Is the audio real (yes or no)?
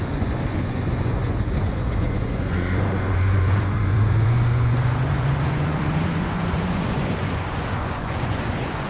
no